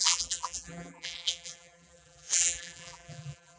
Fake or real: fake